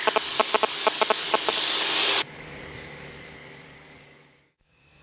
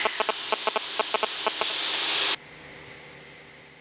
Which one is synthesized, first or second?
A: first